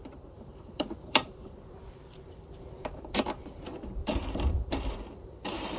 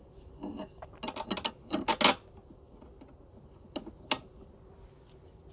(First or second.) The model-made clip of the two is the first